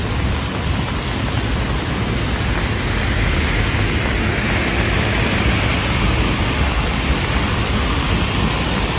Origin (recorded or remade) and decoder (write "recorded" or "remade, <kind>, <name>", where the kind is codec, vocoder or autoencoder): recorded